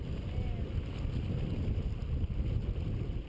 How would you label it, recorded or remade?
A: recorded